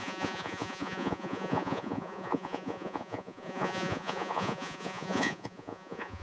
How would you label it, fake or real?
fake